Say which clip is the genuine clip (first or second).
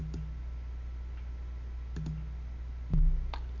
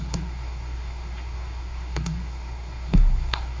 first